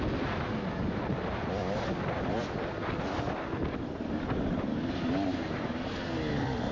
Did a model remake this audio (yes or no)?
no